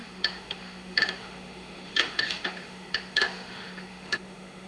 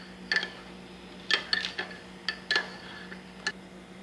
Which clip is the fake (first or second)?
first